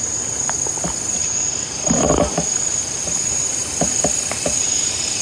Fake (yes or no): no